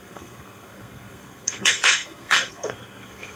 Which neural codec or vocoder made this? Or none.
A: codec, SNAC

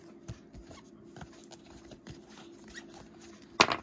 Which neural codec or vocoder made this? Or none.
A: none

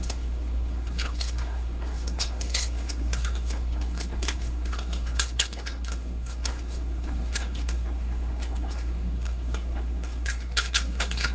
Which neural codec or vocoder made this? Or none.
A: codec, SNAC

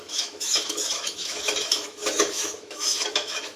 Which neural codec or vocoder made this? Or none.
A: autoencoder, DAC-VAE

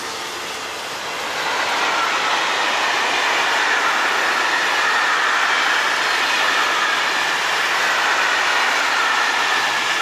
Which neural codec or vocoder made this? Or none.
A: none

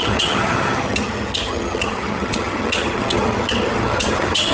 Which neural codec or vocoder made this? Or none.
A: vocoder, HiFi-GAN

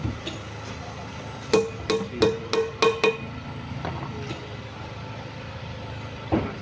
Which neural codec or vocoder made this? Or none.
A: none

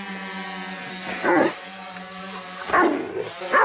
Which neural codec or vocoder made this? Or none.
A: none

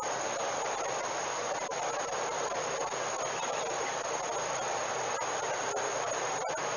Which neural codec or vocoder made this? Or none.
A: none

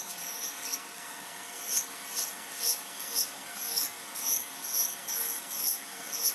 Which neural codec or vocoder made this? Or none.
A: codec, SNAC